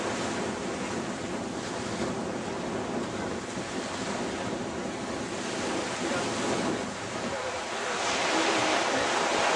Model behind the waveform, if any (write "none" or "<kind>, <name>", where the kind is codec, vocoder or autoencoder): none